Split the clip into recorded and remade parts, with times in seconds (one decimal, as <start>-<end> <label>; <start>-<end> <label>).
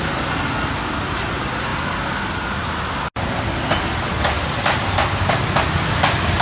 0.0-6.4 recorded